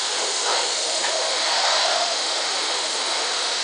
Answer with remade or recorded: remade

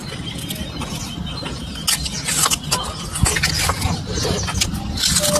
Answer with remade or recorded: recorded